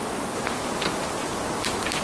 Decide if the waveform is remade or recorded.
recorded